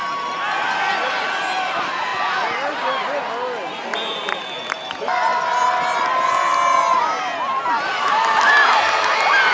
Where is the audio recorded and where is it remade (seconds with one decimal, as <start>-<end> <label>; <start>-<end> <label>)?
0.0-9.5 recorded